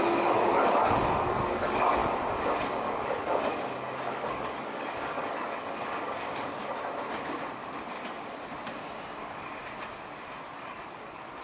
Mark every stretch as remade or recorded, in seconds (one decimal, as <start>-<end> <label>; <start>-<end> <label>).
0.0-2.0 remade; 2.0-2.7 recorded; 2.7-6.6 remade; 6.6-9.2 recorded; 9.2-9.6 remade; 9.6-10.5 recorded; 10.5-11.4 remade